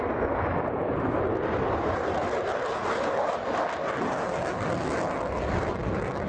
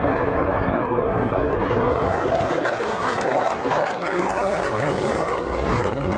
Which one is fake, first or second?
second